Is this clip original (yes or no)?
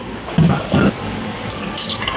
no